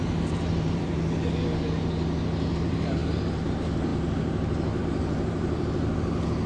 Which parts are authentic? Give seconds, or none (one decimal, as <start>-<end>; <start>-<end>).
0.9-2.5